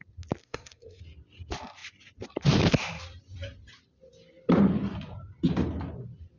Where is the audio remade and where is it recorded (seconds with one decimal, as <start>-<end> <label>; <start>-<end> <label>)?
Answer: 0.0-0.4 recorded; 0.4-1.0 remade; 1.0-6.4 recorded